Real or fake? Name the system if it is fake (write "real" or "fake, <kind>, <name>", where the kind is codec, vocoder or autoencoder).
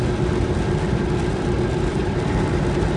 real